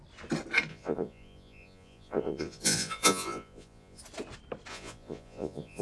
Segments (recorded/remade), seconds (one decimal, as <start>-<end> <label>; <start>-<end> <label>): 0.0-0.7 recorded; 0.7-4.0 remade; 4.0-4.7 recorded; 4.7-5.8 remade

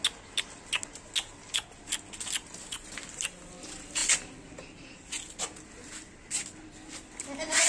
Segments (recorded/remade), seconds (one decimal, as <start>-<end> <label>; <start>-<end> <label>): 0.0-7.7 recorded

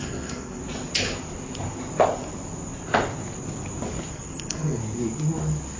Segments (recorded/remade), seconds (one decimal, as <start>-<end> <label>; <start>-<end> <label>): 0.0-0.6 remade; 0.6-4.1 recorded; 4.1-4.8 remade; 4.8-5.8 recorded

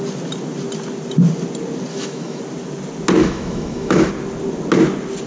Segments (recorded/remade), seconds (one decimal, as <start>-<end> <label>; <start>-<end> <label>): 0.0-1.9 recorded; 1.9-2.4 remade; 2.4-3.2 recorded; 3.2-4.1 remade; 4.1-5.3 recorded

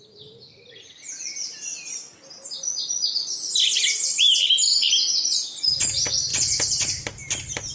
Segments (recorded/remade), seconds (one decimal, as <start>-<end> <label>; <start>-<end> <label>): 0.0-7.7 recorded